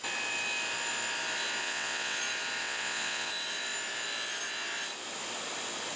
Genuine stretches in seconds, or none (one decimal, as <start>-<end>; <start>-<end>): 0.0-1.6; 2.2-2.6; 3.3-6.0